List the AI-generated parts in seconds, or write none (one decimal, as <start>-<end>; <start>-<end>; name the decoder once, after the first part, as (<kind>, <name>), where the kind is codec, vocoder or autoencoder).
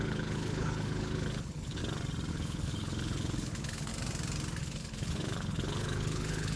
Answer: 0.0-1.8 (codec, HILCodec); 2.3-3.9; 4.6-6.6